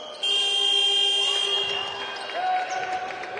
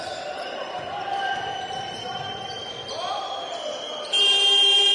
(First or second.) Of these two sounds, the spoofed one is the second